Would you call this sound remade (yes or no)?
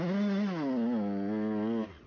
no